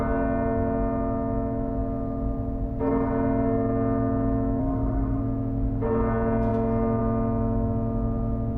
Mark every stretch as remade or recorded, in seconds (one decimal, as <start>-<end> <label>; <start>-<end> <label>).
0.0-4.6 recorded; 4.6-5.2 remade; 5.2-8.6 recorded